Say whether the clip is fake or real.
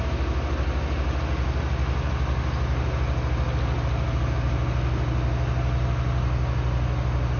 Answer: real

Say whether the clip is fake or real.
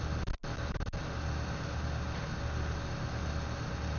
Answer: real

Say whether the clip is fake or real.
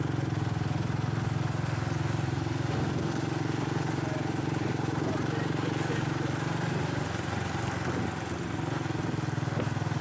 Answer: real